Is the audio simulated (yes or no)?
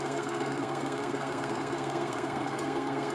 yes